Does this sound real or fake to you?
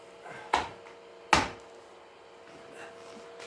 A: real